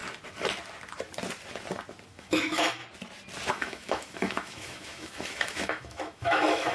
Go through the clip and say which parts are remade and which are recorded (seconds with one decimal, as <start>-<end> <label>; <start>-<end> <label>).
0.0-2.1 recorded; 2.1-2.8 remade; 2.8-3.5 recorded; 3.5-6.7 remade